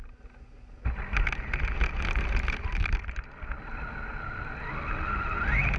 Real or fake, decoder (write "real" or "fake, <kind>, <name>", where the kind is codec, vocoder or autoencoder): real